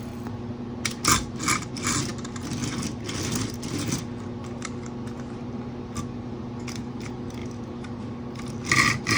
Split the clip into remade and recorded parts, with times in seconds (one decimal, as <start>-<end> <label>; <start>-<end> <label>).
0.0-9.2 recorded